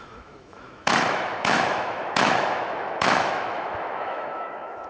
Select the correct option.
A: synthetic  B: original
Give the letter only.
A